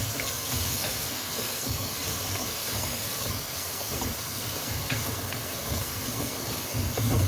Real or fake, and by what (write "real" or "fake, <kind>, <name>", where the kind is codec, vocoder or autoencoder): fake, codec, SNAC